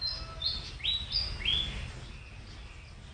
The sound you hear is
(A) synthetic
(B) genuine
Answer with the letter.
B